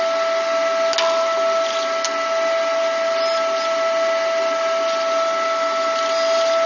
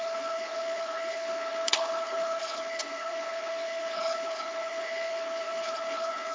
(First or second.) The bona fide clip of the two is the first